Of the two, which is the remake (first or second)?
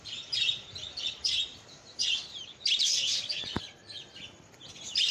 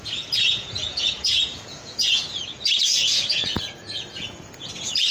second